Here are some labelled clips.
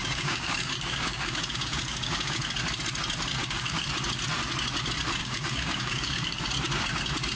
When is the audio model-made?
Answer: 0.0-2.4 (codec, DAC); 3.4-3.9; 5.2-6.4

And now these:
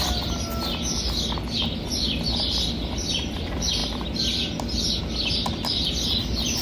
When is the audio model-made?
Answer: none

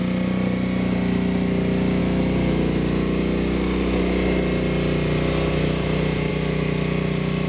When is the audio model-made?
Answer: none

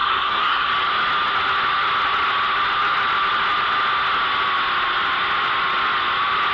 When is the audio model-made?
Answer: 0.0-0.7 (codec, SNAC)

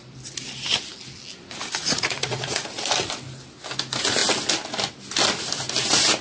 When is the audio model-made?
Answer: 1.8-2.8 (vocoder, Vocos)

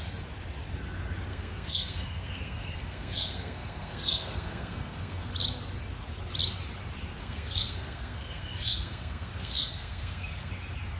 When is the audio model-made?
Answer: 1.3-5.3 (codec, SNAC); 7.2-10.5